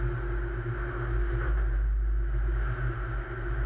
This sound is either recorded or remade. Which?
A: recorded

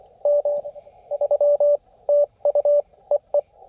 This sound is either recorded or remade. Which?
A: recorded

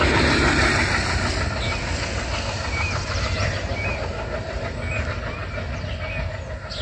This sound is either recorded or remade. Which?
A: recorded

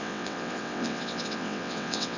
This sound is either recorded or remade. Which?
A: remade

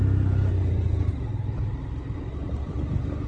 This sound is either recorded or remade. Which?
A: recorded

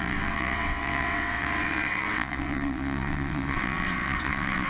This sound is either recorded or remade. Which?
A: remade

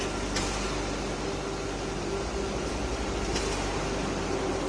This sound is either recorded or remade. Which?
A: recorded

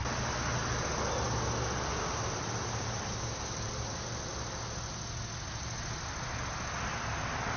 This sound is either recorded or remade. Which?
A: recorded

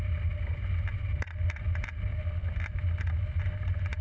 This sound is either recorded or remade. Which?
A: recorded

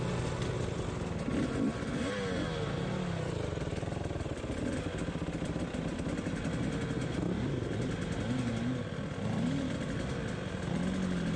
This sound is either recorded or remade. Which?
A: recorded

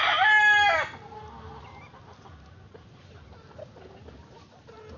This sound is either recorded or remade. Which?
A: recorded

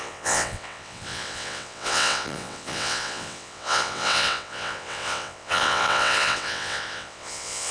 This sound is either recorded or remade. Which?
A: remade